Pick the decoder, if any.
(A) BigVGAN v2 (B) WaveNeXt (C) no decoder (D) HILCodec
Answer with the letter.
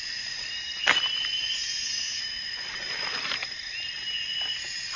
C